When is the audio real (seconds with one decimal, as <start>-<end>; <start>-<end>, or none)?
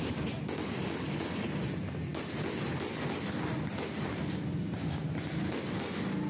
0.0-6.3